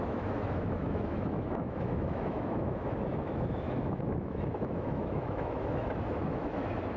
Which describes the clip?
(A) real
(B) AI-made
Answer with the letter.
B